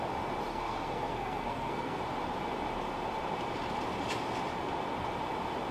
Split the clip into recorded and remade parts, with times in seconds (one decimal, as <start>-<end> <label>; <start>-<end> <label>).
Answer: 0.0-0.5 recorded; 0.5-2.0 remade; 2.0-5.7 recorded